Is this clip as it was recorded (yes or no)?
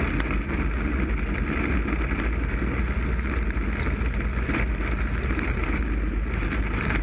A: yes